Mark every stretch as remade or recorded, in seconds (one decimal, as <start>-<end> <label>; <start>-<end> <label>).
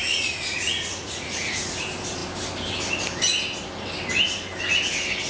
0.0-1.7 remade; 1.7-5.3 recorded